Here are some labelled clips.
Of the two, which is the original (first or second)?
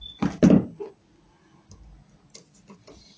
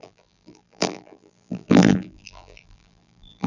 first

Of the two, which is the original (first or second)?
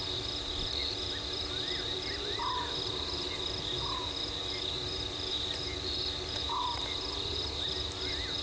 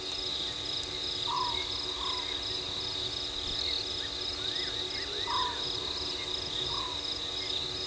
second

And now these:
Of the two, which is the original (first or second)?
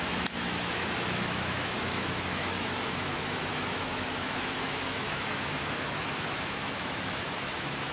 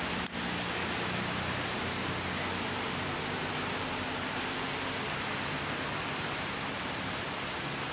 second